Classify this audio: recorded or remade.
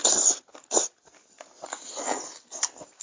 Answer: recorded